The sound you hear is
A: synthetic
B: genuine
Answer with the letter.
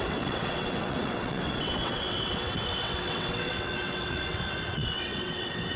A